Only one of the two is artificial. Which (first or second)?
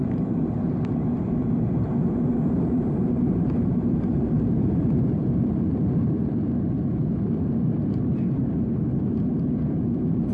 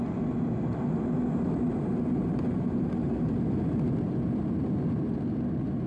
first